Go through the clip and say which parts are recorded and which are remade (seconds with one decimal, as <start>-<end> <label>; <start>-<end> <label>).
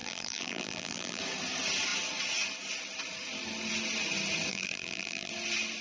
0.0-1.2 remade; 1.2-4.5 recorded; 4.5-5.3 remade; 5.3-5.8 recorded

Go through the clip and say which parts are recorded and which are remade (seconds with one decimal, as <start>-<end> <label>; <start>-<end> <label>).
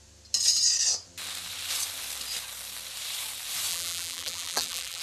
0.0-3.7 recorded; 3.7-5.0 remade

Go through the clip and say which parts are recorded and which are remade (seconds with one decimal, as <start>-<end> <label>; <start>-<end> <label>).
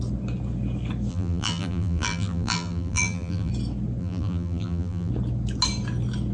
0.0-1.1 recorded; 1.1-3.5 remade; 3.5-4.0 recorded; 4.0-5.1 remade; 5.1-6.3 recorded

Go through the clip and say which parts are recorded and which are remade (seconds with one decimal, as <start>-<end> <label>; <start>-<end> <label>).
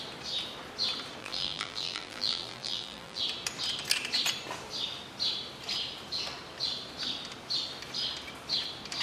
0.0-1.2 recorded; 1.2-3.2 remade; 3.2-9.0 recorded